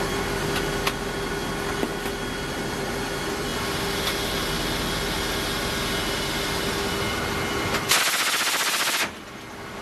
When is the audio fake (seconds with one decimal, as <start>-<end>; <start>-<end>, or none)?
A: none